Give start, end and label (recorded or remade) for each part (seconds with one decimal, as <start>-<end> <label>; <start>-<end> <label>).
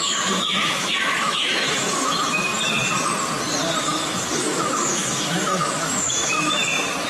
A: 0.0-2.5 remade; 2.5-3.8 recorded; 3.8-7.1 remade